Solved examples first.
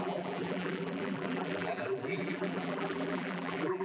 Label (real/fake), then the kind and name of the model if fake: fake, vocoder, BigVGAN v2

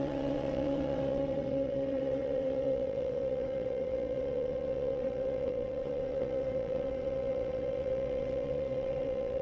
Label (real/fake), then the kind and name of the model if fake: fake, vocoder, WaveNeXt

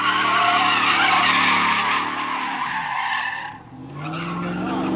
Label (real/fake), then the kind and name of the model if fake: real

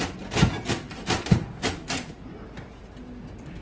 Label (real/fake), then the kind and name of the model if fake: real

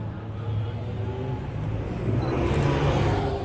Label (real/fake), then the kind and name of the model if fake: real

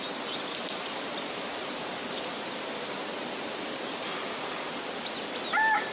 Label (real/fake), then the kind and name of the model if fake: real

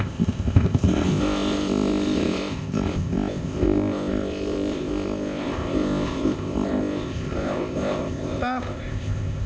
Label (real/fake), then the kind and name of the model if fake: fake, codec, ZipCodec